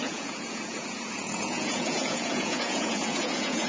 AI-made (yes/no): yes